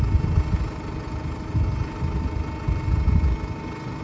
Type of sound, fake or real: real